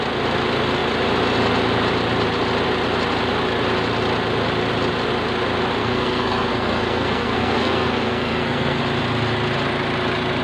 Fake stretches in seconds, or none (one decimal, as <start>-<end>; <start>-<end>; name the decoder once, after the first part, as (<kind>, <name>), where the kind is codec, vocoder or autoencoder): 5.8-8.8 (codec, SNAC)